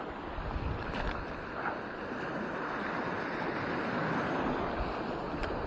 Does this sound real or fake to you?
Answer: real